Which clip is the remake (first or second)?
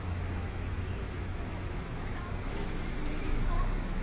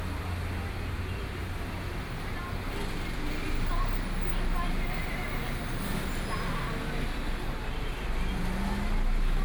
first